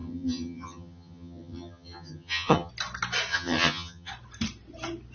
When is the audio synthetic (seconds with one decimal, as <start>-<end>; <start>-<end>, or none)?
0.0-2.7; 3.3-4.1